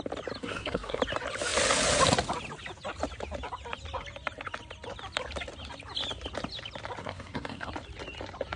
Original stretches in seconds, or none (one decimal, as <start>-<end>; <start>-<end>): 0.0-0.4; 1.0-7.0; 7.7-8.6